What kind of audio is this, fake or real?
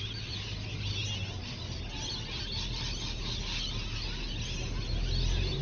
real